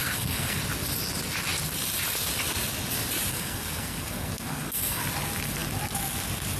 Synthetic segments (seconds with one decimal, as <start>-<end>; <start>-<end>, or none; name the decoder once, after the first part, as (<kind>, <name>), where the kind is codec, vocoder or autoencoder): 0.0-0.6 (codec, SNAC); 3.3-5.0